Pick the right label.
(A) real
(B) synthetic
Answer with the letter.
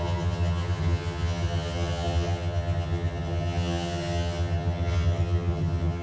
B